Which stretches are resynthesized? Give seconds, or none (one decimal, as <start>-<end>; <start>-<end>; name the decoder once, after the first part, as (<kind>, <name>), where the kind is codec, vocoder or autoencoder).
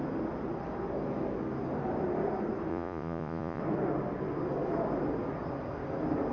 2.7-3.6 (vocoder, Vocos)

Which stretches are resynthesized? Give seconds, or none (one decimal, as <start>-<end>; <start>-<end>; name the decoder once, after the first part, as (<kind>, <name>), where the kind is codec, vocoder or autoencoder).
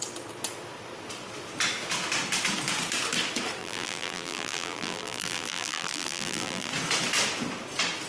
3.6-6.7 (vocoder, BigVGAN v2)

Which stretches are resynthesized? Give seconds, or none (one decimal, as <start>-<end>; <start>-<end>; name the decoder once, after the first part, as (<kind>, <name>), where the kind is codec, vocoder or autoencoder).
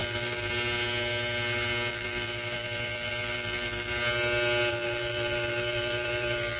0.0-0.5 (vocoder, BigVGAN v2); 1.9-3.9; 4.7-6.6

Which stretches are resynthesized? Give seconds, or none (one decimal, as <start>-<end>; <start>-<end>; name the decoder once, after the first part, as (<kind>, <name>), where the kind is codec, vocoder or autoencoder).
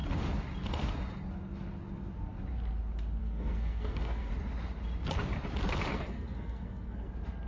3.2-4.3 (codec, SNAC); 5.9-7.1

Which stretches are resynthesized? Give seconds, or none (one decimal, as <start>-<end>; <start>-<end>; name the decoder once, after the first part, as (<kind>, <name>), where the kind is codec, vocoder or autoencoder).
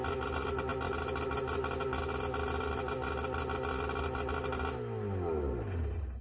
none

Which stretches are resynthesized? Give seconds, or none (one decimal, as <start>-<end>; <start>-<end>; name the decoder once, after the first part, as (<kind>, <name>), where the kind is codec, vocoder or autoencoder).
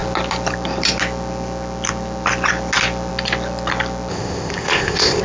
4.1-5.2 (codec, ZipCodec)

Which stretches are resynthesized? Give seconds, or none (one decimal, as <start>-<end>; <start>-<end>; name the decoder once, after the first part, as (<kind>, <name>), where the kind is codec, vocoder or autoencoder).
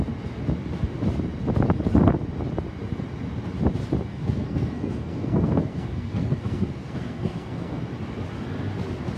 4.1-7.8 (codec, SNAC)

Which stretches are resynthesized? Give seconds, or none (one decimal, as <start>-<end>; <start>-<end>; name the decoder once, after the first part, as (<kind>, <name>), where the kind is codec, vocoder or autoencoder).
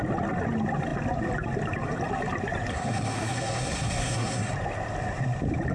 2.7-4.5 (codec, SNAC)